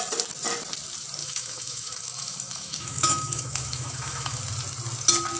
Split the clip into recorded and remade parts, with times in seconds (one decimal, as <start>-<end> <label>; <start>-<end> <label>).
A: 0.0-1.2 recorded; 1.2-4.4 remade; 4.4-5.4 recorded